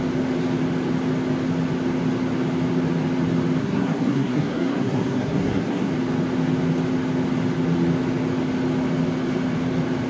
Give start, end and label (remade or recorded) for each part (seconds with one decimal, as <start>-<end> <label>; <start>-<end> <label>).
0.0-3.6 recorded; 3.6-5.9 remade; 5.9-10.1 recorded